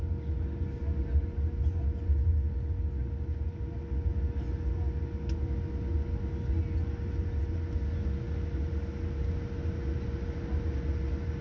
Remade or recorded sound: recorded